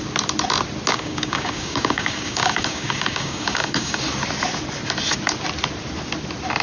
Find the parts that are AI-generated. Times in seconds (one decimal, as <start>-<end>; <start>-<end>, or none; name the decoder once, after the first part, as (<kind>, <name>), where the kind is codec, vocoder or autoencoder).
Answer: 0.9-4.0 (codec, DAC)